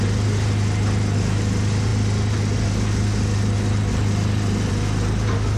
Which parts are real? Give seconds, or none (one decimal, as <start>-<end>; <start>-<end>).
0.0-5.6